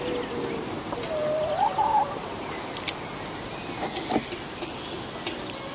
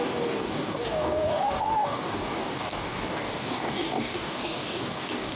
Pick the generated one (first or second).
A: second